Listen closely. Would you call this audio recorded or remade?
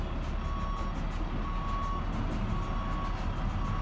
recorded